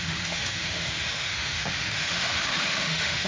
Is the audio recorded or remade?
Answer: remade